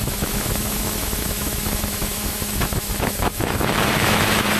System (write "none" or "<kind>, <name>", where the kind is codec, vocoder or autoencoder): autoencoder, DAC-VAE